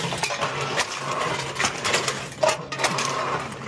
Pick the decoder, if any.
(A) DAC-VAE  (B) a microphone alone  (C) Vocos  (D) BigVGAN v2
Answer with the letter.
B